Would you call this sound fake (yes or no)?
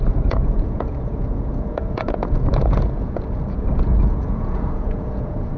yes